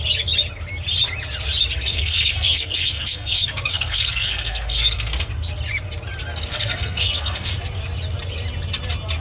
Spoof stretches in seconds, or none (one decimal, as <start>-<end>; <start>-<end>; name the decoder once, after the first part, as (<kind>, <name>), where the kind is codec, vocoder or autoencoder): 1.9-5.3 (codec, SNAC); 6.5-7.5